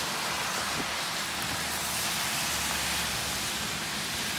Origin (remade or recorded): recorded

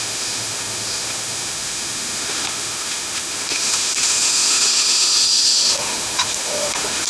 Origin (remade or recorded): remade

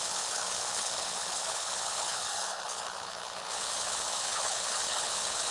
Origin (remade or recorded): remade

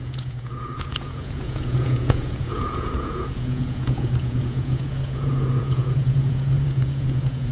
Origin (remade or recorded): remade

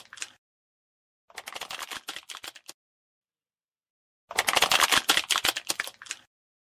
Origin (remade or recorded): recorded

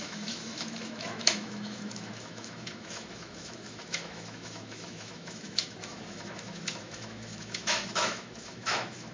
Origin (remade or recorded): remade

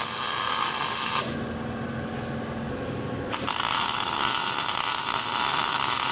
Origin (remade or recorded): recorded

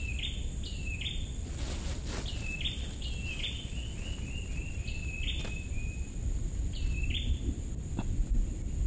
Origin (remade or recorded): recorded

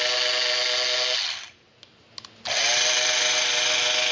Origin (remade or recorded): recorded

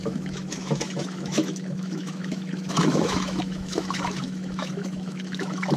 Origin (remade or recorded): remade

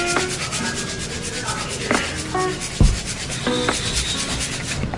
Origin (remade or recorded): recorded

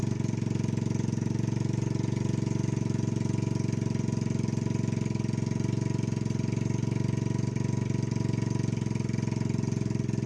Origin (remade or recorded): recorded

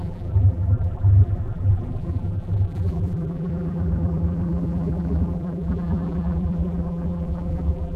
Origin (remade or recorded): remade